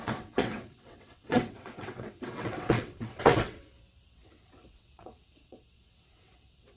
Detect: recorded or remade remade